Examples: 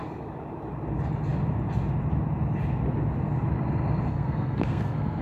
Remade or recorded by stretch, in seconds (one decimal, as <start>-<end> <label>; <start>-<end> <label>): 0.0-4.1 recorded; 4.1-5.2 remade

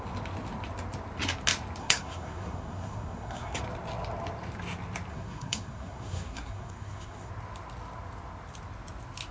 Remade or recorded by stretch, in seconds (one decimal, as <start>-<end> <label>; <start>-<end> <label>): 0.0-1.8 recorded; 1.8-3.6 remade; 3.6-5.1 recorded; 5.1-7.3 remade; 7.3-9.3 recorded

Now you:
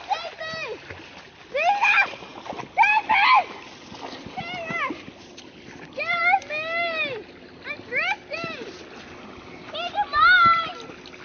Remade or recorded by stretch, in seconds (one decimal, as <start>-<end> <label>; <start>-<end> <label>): 0.0-11.2 recorded

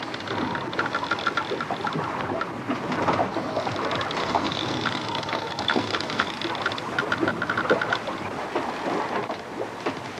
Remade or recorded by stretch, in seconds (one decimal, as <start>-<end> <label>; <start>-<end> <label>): 0.0-4.2 recorded; 4.2-6.4 remade; 6.4-10.2 recorded